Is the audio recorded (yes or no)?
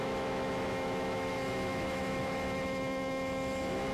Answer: no